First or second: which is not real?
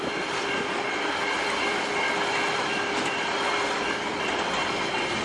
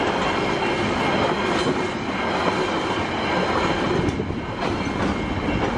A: first